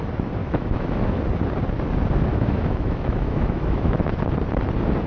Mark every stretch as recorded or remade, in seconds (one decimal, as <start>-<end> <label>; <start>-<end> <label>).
0.0-0.4 recorded; 0.4-1.2 remade; 1.2-2.3 recorded; 2.3-4.2 remade; 4.2-5.1 recorded